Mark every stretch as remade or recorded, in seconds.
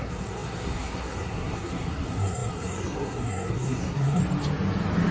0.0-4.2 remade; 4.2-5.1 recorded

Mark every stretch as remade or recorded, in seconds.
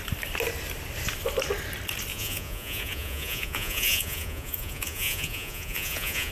0.0-2.1 recorded; 2.1-6.3 remade